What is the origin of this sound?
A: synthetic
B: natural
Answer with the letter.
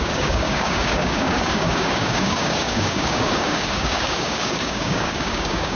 A